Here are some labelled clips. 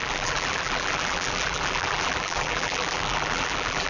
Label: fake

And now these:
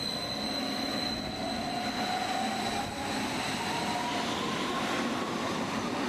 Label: real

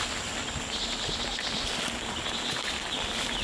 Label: real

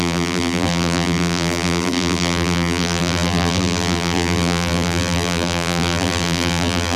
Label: fake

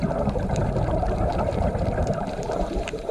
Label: fake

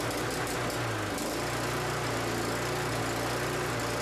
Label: real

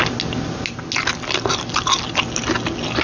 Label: real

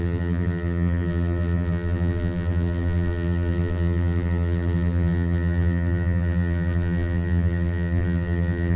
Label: fake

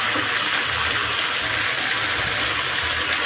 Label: fake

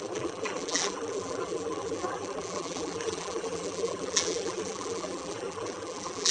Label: fake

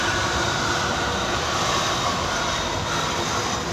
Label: fake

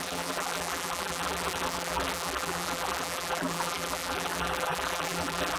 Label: fake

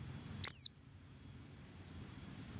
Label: fake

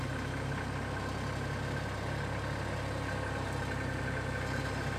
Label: real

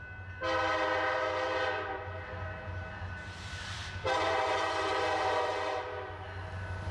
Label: real